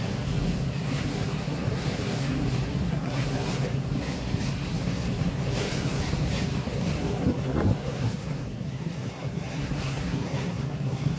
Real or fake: fake